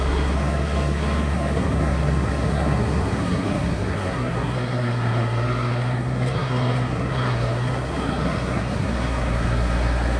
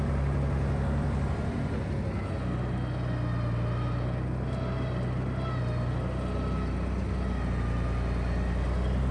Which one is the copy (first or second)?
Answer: first